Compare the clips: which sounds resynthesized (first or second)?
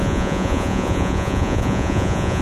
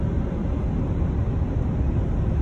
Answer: first